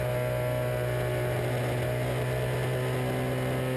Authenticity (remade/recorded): recorded